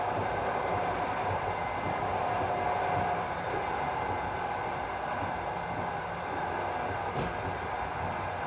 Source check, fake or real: real